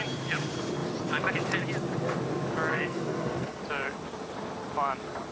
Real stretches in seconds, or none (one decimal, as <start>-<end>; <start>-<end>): 0.0-2.7; 3.6-5.3